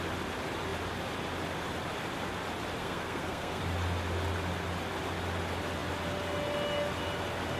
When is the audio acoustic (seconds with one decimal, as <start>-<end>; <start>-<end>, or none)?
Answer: 0.0-2.8; 3.6-7.6